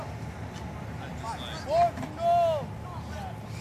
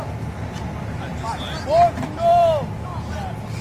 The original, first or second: first